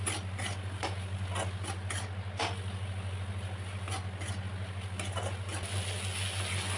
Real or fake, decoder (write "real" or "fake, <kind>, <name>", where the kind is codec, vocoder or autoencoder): real